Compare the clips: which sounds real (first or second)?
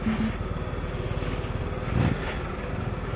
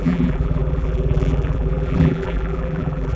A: first